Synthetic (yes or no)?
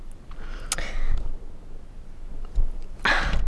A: no